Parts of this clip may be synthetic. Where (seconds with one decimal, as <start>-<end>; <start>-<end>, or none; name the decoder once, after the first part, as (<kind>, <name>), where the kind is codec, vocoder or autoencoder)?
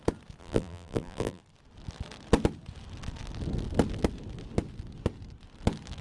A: 0.4-1.4 (vocoder, BigVGAN v2)